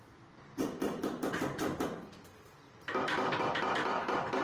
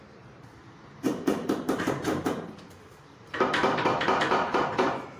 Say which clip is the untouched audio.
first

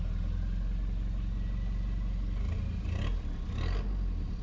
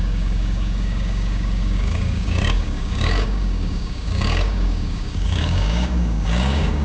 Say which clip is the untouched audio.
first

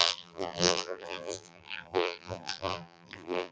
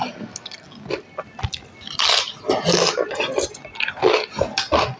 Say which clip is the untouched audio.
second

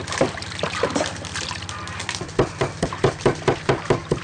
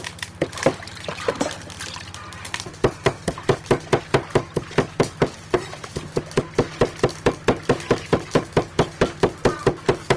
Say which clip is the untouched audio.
second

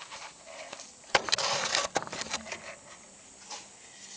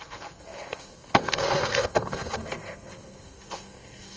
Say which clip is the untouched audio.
first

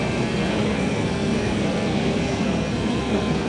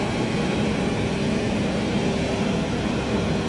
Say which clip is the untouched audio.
second